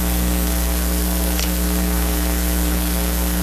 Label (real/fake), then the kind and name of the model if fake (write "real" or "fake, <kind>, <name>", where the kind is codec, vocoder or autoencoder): fake, codec, SNAC